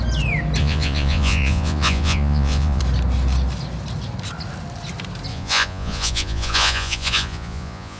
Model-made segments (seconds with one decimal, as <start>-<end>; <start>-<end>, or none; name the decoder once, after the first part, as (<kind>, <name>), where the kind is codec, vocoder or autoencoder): 0.6-2.8 (vocoder, Vocos); 5.3-8.0